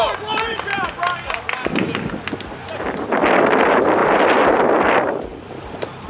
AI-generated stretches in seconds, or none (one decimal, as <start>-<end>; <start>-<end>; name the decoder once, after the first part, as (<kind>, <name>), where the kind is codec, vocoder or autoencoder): 4.0-4.6 (vocoder, BigVGAN v2); 5.3-6.1